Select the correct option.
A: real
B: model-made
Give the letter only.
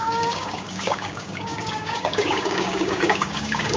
B